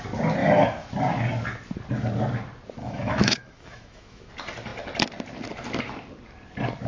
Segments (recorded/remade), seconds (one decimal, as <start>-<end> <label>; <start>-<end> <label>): 0.0-0.4 recorded; 0.4-0.9 remade; 0.9-2.8 recorded; 2.8-4.3 remade; 4.3-6.9 recorded